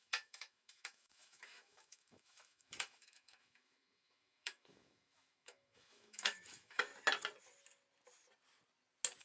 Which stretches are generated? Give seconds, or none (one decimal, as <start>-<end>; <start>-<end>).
0.0-6.9